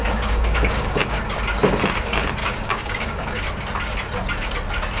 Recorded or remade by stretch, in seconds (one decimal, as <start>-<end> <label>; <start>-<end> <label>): 0.0-1.2 remade; 1.2-2.4 recorded; 2.4-3.4 remade; 3.4-5.0 recorded